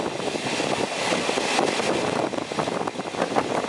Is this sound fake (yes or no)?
no